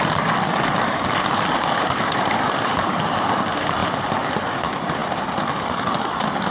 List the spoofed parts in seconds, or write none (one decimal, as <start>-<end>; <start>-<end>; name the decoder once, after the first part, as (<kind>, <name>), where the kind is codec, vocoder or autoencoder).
5.0-5.6 (vocoder, BigVGAN v2)